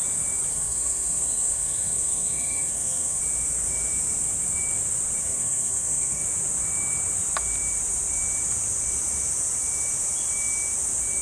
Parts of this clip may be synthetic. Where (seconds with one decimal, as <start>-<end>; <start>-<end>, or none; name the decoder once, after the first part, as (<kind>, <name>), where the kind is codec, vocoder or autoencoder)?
0.5-3.2 (codec, SNAC); 5.2-6.2